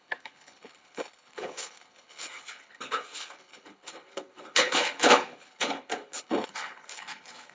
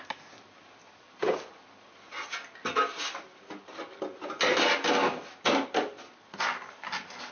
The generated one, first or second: first